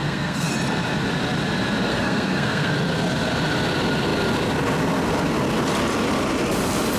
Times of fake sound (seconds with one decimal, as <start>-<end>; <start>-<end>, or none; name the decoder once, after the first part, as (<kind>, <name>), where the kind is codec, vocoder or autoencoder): 0.0-0.5 (codec, SNAC); 1.9-2.7